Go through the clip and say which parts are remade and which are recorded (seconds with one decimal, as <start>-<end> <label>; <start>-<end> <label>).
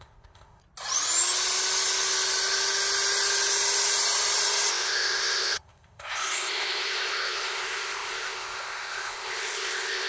0.0-0.6 remade; 0.6-4.7 recorded; 4.7-10.1 remade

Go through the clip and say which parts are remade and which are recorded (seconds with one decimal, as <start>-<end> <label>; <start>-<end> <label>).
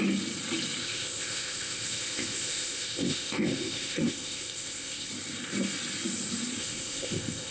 0.0-0.8 recorded; 0.8-5.1 remade; 5.1-6.6 recorded; 6.6-7.5 remade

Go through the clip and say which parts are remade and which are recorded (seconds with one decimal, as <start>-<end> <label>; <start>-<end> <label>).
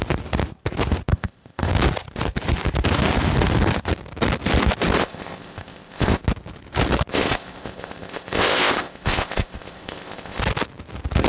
0.0-1.1 recorded; 1.1-1.7 remade; 1.7-5.0 recorded; 5.0-6.2 remade; 6.2-7.1 recorded; 7.1-10.4 remade; 10.4-11.3 recorded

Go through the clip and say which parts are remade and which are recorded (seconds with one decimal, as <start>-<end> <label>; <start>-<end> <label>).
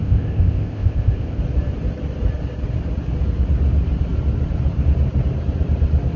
0.0-1.4 remade; 1.4-6.2 recorded